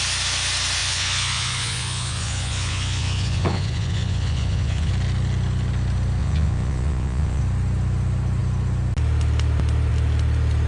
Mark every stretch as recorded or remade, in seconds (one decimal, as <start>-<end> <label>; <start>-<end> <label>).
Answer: 0.0-0.8 recorded; 0.8-4.9 remade; 4.9-6.2 recorded; 6.2-7.4 remade; 7.4-10.7 recorded